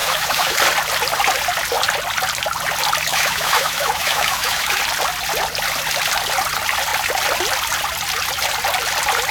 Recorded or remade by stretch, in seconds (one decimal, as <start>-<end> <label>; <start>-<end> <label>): 0.0-0.6 remade; 0.6-3.1 recorded; 3.1-4.8 remade; 4.8-9.3 recorded